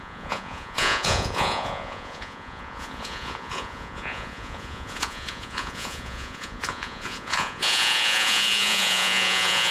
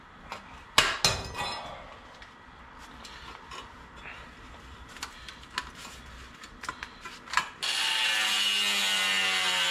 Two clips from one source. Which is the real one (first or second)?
second